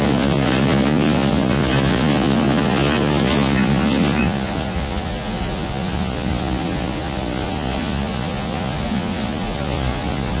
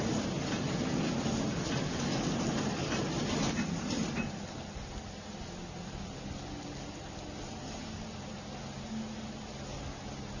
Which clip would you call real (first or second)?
second